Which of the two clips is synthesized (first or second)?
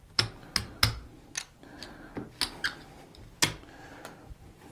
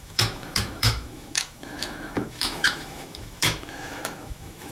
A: second